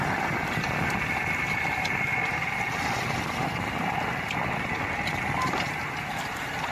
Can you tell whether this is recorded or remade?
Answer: recorded